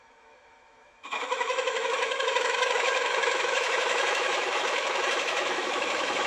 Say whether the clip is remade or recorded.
remade